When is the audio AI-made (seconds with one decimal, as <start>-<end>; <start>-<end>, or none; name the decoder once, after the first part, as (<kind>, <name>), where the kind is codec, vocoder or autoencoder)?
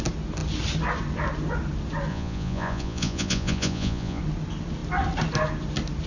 2.1-4.2 (vocoder, Vocos)